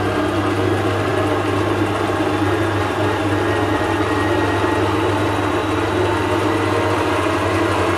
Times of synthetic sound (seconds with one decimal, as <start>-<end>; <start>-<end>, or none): none